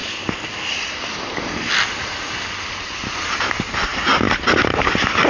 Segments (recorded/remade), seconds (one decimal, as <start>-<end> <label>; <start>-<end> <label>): 0.0-5.3 recorded